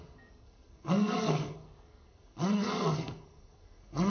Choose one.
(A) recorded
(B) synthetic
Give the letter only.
B